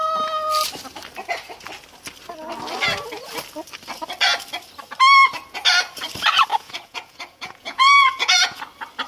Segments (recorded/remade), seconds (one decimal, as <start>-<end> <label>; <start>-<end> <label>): 0.0-6.5 recorded; 6.5-8.6 remade; 8.6-9.1 recorded